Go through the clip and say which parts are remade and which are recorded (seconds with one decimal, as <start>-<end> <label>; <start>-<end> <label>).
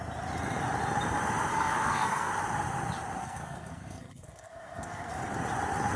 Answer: 0.0-1.5 recorded; 1.5-2.3 remade; 2.3-3.2 recorded; 3.2-5.1 remade; 5.1-6.0 recorded